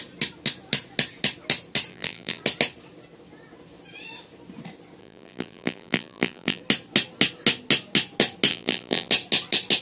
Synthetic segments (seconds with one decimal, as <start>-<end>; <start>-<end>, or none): 1.9-2.4; 5.0-6.6; 8.5-9.1